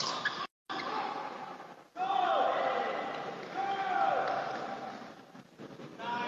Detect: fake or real real